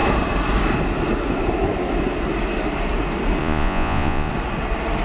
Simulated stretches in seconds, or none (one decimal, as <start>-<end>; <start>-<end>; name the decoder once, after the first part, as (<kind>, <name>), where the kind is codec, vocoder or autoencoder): 3.4-4.3 (vocoder, Vocos)